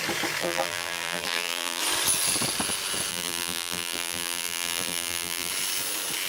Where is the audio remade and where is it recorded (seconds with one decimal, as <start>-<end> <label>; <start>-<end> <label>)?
0.0-0.4 recorded; 0.4-1.8 remade; 1.8-3.1 recorded; 3.1-5.5 remade; 5.5-6.3 recorded